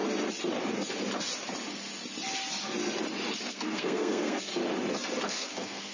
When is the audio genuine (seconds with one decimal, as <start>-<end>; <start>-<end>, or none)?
0.0-3.5; 4.5-5.2